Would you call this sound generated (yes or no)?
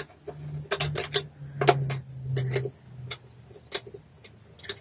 no